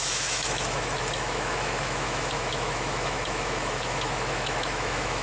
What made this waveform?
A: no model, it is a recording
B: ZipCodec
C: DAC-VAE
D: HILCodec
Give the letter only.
C